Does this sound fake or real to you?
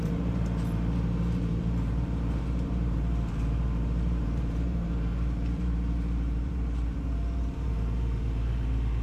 fake